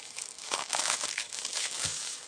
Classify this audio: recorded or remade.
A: remade